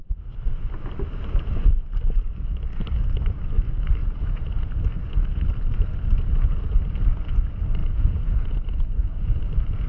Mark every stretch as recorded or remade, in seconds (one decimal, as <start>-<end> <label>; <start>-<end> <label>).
0.0-4.0 recorded; 4.0-4.8 remade; 4.8-7.8 recorded; 7.8-9.4 remade; 9.4-9.9 recorded